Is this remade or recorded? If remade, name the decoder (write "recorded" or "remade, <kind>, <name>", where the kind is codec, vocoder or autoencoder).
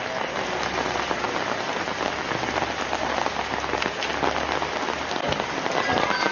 recorded